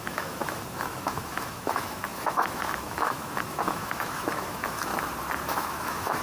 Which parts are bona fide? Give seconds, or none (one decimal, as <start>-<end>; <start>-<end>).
4.9-5.5